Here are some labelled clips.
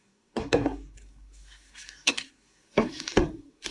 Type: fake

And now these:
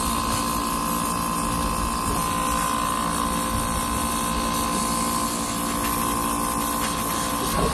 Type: real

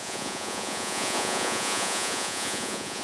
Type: fake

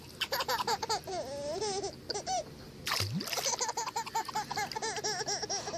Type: real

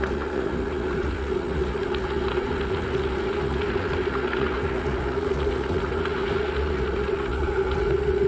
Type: fake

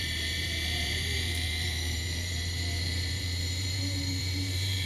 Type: fake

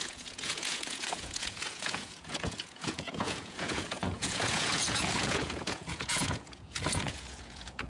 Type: fake